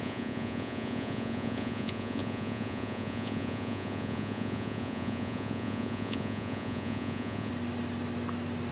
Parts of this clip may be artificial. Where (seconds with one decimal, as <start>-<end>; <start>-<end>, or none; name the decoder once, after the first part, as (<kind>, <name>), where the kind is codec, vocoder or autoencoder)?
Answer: 0.0-7.5 (vocoder, Vocos)